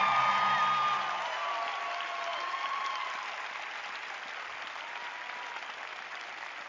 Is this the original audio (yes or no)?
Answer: yes